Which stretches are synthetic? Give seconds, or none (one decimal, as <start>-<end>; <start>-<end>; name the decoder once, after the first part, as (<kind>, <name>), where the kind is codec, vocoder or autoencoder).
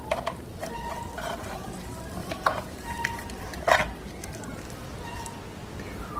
2.2-3.0 (vocoder, Vocos)